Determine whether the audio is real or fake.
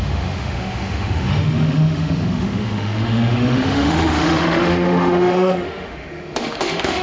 fake